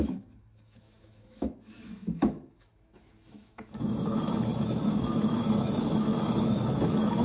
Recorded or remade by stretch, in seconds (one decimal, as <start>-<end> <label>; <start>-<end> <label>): 0.0-7.2 remade